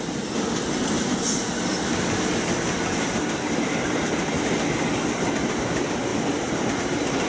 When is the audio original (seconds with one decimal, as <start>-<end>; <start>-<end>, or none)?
0.0-7.3